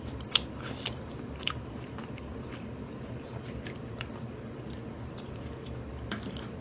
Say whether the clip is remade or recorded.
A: remade